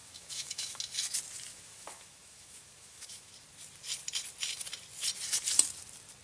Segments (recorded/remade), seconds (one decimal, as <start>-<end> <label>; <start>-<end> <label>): 0.0-0.8 remade; 0.8-1.5 recorded; 1.5-3.3 remade; 3.3-6.2 recorded